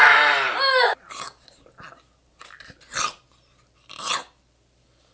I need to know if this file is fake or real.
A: real